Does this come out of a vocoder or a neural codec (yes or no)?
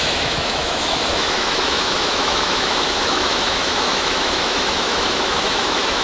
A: yes